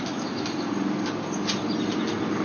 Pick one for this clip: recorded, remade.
recorded